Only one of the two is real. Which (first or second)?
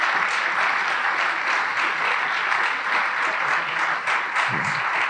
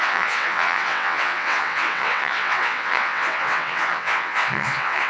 first